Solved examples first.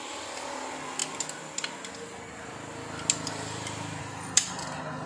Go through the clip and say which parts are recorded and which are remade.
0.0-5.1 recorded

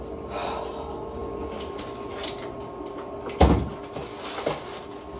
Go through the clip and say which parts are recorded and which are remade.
0.0-5.2 recorded

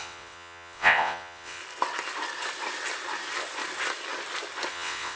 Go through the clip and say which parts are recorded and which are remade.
0.0-1.6 remade; 1.6-4.7 recorded; 4.7-5.2 remade

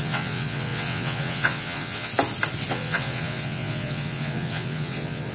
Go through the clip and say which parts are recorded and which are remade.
0.0-2.1 remade; 2.1-2.7 recorded; 2.7-5.3 remade